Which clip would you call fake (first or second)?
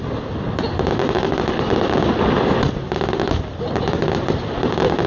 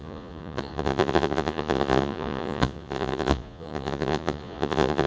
second